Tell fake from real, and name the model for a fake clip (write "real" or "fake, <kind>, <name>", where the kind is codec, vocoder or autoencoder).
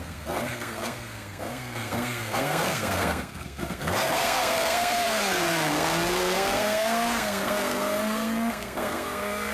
fake, codec, SNAC